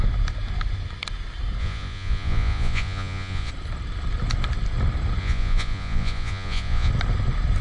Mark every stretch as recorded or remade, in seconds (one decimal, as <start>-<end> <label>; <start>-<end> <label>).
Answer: 0.0-1.6 recorded; 1.6-3.5 remade; 3.5-5.2 recorded; 5.2-6.9 remade; 6.9-7.6 recorded